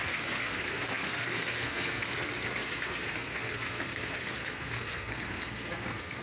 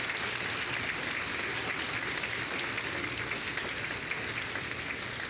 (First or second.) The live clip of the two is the second